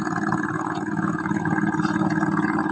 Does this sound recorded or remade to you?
remade